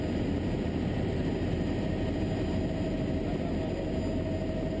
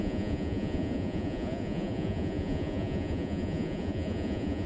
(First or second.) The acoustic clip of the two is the first